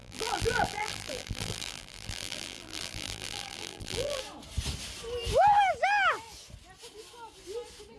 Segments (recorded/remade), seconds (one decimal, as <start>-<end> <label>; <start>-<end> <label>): 0.0-4.2 remade; 4.2-8.0 recorded